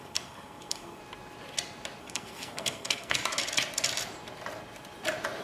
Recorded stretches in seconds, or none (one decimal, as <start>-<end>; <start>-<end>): 1.0-2.0; 3.2-5.4